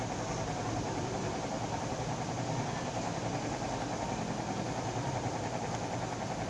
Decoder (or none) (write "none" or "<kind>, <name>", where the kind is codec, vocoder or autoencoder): none